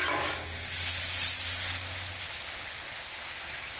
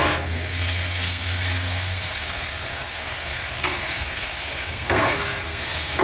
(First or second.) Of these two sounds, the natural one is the first